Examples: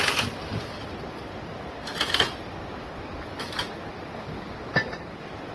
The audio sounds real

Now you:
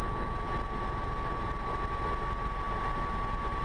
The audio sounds real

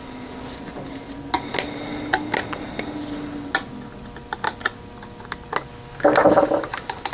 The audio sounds real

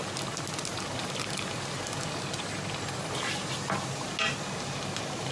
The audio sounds real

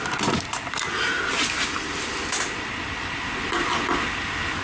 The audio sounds real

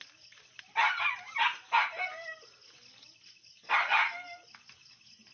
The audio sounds real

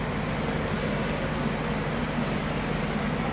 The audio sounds real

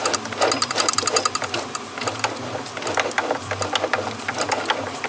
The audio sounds real